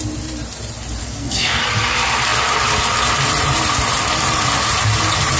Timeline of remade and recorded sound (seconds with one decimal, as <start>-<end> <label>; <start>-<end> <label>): 0.0-1.0 recorded; 1.0-1.6 remade; 1.6-5.4 recorded